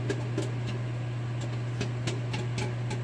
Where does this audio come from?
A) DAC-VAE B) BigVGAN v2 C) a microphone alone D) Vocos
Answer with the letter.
C